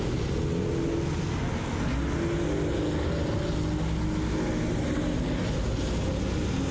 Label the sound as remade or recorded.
recorded